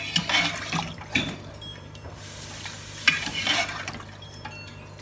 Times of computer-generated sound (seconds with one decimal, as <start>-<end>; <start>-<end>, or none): 1.7-3.9